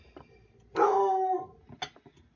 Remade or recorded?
recorded